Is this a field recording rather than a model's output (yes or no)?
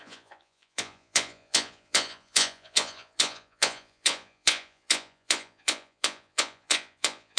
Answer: no